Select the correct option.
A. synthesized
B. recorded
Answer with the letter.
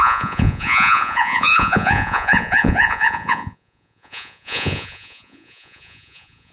A